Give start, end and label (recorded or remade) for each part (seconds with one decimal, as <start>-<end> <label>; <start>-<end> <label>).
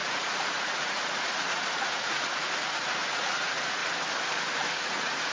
0.0-3.8 remade; 3.8-4.5 recorded; 4.5-5.3 remade